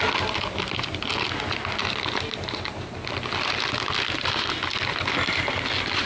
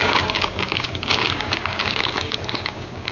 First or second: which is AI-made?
second